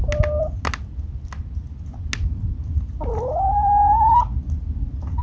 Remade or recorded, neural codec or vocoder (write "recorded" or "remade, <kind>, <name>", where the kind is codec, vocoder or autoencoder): recorded